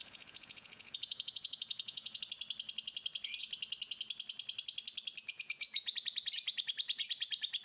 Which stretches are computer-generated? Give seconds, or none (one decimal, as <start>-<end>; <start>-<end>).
0.0-2.2; 5.2-5.9